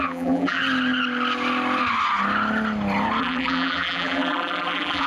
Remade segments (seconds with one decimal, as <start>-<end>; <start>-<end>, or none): 0.0-0.6; 3.2-5.1